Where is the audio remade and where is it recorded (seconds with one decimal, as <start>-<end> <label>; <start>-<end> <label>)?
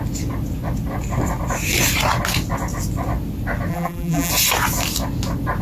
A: 0.0-3.7 recorded; 3.7-4.3 remade; 4.3-5.6 recorded